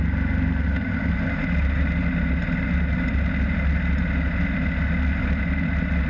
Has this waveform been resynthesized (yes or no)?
no